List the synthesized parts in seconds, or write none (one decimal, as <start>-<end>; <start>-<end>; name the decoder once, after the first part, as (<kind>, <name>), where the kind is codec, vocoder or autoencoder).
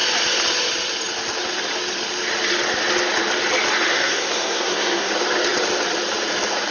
3.9-5.1 (codec, SNAC)